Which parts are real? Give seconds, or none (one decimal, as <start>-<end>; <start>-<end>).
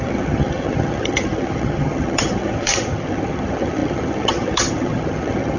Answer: none